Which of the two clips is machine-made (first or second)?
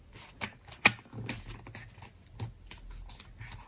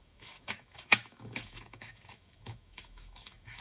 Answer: second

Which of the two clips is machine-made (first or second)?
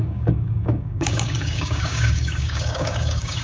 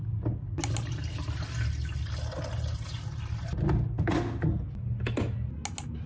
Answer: first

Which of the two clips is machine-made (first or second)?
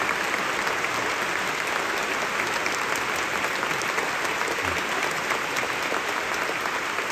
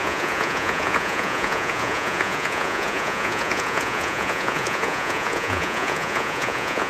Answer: second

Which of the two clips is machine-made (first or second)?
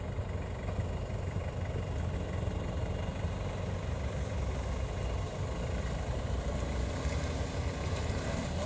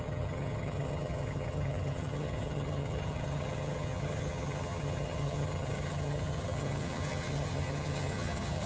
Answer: second